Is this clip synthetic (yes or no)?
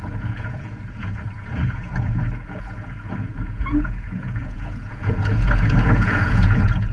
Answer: yes